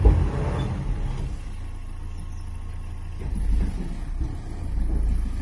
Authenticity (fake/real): real